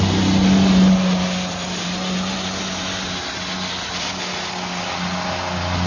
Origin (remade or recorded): recorded